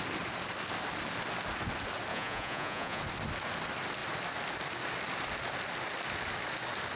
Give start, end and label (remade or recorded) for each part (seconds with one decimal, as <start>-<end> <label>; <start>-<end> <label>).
0.0-2.1 recorded; 2.1-3.0 remade; 3.0-7.0 recorded